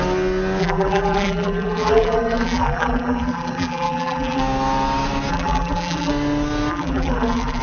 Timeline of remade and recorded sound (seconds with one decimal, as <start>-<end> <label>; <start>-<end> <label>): 0.0-0.6 recorded; 0.6-4.4 remade; 4.4-5.3 recorded; 5.3-6.1 remade; 6.1-6.7 recorded; 6.7-7.6 remade